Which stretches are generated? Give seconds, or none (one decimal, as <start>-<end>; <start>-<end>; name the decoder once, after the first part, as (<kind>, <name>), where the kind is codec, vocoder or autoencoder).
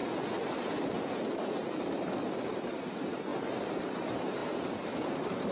1.8-3.3 (vocoder, BigVGAN v2); 3.8-5.5